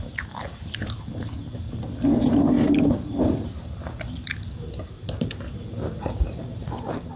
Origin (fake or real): real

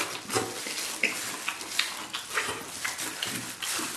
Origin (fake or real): real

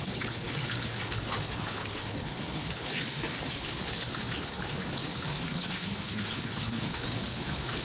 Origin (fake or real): fake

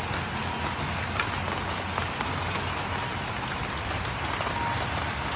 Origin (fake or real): real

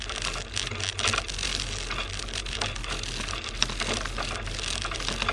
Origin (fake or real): real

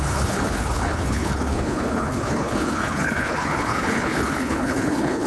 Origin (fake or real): fake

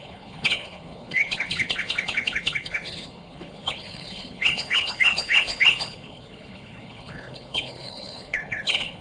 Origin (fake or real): fake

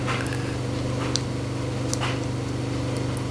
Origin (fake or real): real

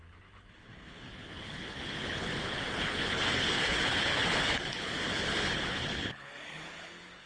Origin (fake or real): fake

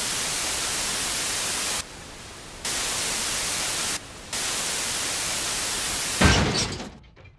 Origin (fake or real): real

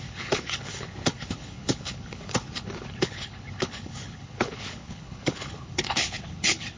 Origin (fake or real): fake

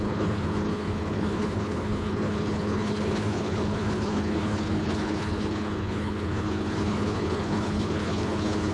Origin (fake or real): fake